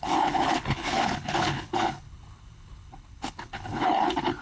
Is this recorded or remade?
remade